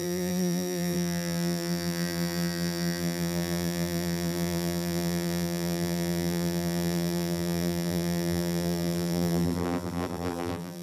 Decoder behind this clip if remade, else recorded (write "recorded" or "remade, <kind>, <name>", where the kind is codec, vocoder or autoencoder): remade, vocoder, BigVGAN v2